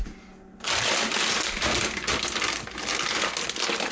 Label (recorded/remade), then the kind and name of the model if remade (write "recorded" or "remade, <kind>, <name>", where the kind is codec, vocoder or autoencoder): recorded